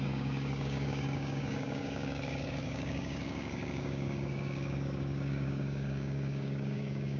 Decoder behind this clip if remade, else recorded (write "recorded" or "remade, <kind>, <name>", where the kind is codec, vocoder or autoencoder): remade, codec, DAC